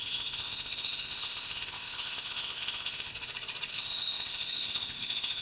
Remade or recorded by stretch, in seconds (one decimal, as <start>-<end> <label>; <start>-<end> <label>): 0.0-3.1 remade; 3.1-3.7 recorded; 3.7-5.4 remade